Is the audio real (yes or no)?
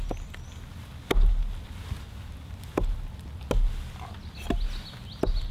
yes